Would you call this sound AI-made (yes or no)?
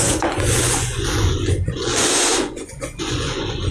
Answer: yes